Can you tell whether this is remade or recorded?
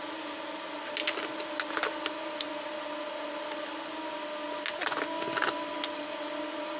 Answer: recorded